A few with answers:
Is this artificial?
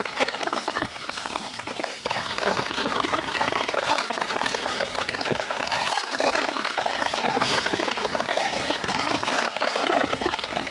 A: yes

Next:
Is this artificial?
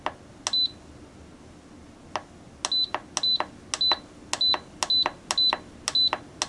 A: no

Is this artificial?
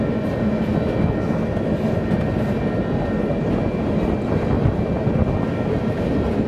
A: no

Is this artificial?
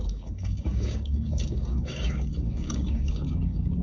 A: yes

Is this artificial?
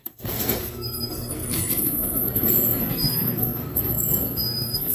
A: yes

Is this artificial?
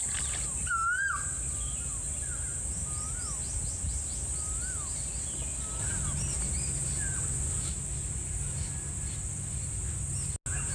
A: no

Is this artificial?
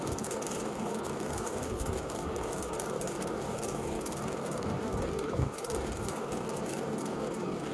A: yes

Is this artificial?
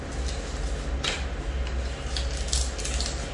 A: no